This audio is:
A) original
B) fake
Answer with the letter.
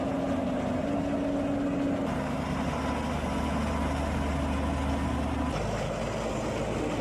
A